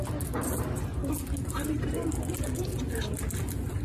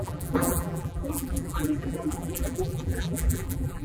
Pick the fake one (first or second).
second